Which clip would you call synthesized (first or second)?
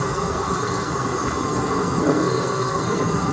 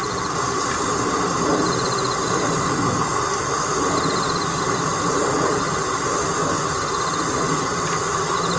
first